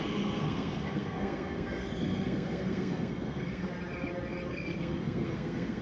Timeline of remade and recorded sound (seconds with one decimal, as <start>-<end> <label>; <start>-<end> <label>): 0.0-3.7 remade; 3.7-4.5 recorded; 4.5-5.8 remade